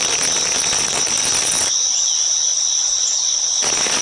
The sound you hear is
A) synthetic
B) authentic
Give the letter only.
B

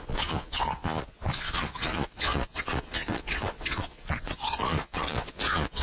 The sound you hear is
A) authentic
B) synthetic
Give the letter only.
B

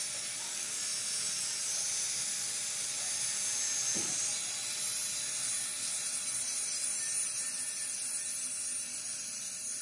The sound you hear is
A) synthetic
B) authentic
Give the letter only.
B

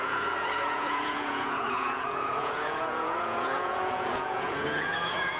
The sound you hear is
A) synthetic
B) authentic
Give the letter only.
A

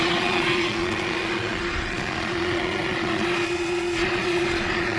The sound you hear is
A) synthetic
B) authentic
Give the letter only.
A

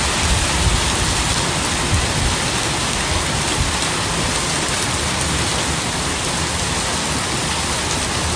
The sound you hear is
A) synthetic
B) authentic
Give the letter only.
B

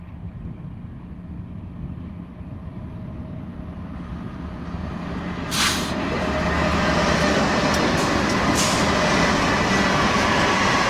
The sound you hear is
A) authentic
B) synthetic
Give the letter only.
A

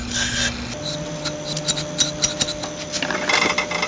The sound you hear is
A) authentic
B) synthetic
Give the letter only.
A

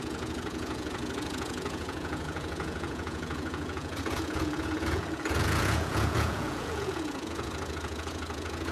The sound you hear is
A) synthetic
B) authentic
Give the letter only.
A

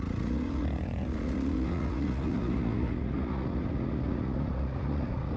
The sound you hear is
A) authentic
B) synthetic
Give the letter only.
B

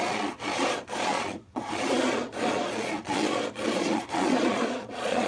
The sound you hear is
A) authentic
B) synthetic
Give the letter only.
B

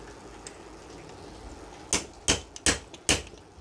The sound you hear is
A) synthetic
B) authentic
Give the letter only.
B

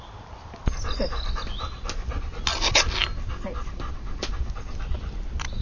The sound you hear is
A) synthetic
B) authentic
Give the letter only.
B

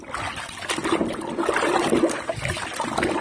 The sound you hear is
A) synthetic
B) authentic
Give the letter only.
B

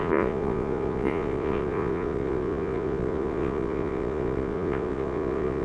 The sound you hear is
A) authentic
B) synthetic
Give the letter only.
B